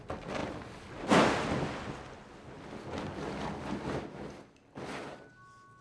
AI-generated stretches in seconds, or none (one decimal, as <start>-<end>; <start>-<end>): none